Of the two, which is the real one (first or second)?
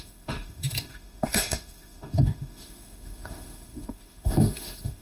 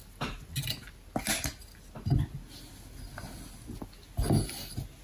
second